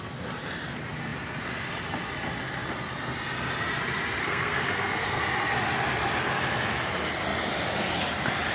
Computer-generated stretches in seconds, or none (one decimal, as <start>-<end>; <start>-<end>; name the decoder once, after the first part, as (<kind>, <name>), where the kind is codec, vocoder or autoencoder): 4.2-5.2 (codec, SNAC)